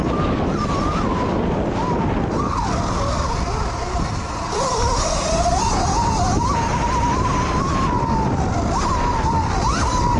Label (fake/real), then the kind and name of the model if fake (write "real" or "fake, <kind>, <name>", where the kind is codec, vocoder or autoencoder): real